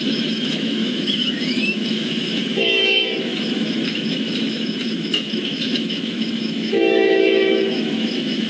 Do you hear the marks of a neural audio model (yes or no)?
yes